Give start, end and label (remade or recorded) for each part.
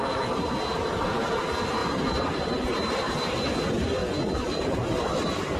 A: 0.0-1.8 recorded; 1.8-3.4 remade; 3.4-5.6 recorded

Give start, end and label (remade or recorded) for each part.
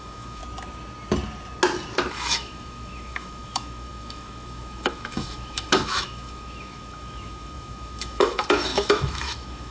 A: 0.0-0.4 remade; 0.4-2.1 recorded; 2.1-9.7 remade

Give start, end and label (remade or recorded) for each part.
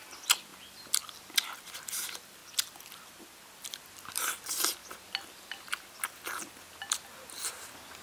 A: 0.0-2.4 remade; 2.4-3.6 recorded; 3.6-4.8 remade; 4.8-7.4 recorded; 7.4-8.0 remade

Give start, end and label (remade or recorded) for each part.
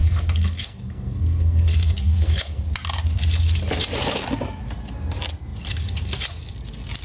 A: 0.0-2.6 remade; 2.6-7.0 recorded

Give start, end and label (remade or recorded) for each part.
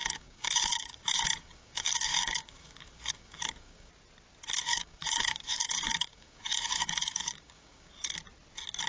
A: 0.0-3.9 remade; 3.9-4.7 recorded; 4.7-7.9 remade; 7.9-8.9 recorded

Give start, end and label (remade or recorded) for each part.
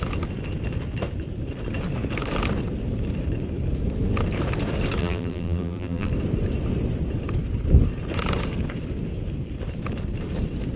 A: 0.0-5.0 recorded; 5.0-6.1 remade; 6.1-10.8 recorded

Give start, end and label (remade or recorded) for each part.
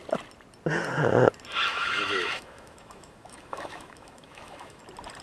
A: 0.0-1.7 recorded; 1.7-4.8 remade; 4.8-5.2 recorded